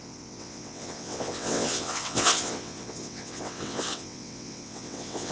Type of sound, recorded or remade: remade